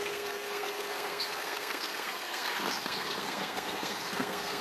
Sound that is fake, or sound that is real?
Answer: fake